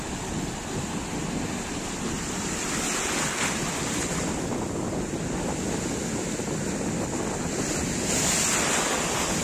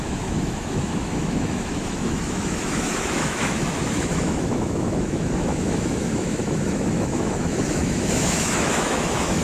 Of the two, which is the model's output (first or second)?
second